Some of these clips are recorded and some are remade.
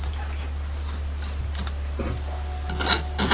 recorded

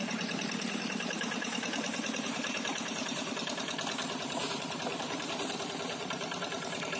remade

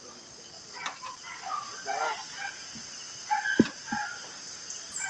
recorded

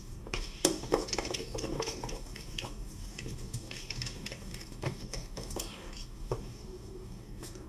remade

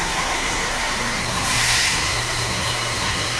remade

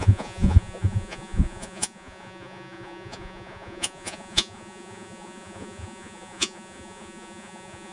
remade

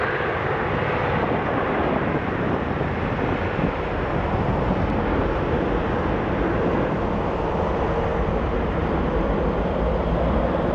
recorded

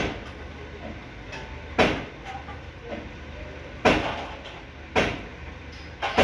recorded